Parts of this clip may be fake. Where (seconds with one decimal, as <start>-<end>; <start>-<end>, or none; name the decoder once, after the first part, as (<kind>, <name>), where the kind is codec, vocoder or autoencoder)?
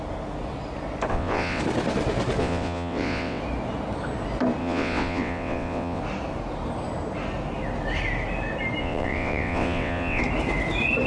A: 1.1-1.6 (vocoder, WaveNeXt); 2.4-3.4; 4.6-6.0; 8.8-10.2